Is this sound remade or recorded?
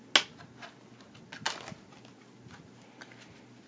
recorded